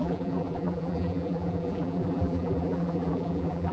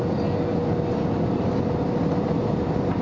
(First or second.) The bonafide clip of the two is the second